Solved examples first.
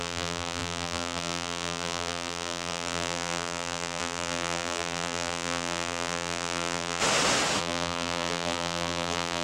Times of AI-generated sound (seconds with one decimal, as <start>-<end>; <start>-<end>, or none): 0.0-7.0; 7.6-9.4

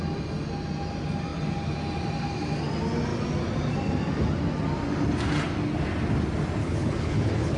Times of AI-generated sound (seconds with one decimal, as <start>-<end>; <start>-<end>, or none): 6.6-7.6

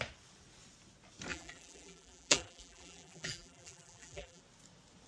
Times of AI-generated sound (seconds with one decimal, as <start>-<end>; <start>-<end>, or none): 1.3-4.4